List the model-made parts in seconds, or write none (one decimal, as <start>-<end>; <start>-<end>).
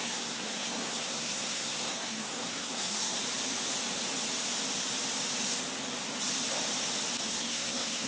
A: 0.0-3.2; 7.3-8.1